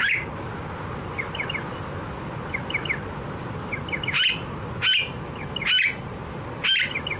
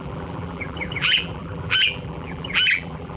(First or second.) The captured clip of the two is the first